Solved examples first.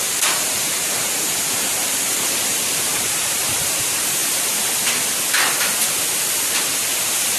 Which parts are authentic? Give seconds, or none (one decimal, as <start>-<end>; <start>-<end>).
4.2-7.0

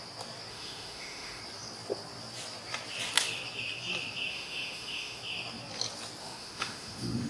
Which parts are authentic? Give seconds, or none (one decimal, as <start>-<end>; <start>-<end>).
0.0-0.5; 1.4-4.3; 5.2-6.2

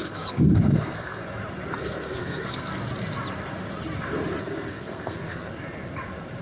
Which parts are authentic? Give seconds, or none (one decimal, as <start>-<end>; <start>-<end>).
1.2-1.8; 2.7-4.4; 5.5-6.4

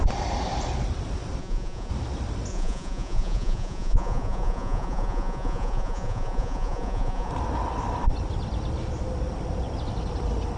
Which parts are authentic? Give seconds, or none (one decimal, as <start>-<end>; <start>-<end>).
0.0-1.4; 1.9-2.5; 7.3-10.6

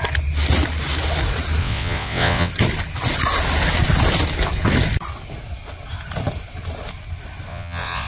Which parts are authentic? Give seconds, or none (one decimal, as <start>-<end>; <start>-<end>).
0.0-1.6; 2.5-7.5

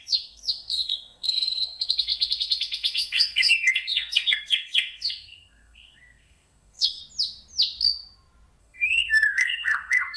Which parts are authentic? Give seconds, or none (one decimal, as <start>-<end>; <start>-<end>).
7.0-8.6